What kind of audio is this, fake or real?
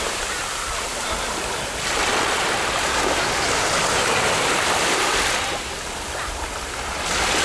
real